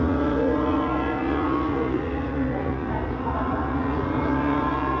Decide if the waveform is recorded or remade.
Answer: remade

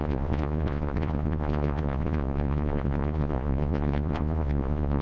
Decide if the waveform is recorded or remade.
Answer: remade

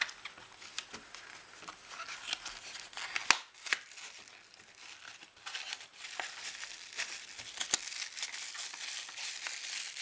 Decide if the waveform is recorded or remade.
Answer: recorded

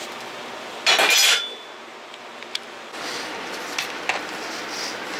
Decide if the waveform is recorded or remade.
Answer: recorded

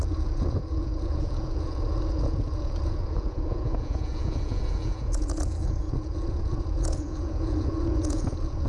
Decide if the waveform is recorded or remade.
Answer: remade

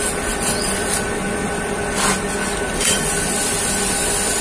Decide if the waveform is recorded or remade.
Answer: recorded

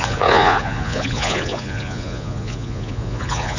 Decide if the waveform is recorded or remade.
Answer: remade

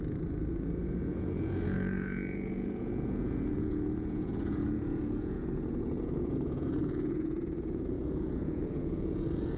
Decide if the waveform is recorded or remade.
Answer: remade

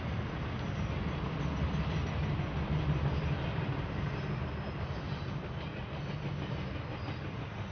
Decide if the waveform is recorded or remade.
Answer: recorded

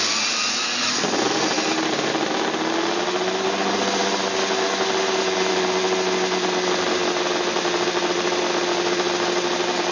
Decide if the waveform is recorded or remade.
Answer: recorded